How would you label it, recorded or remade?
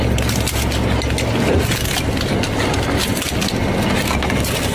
recorded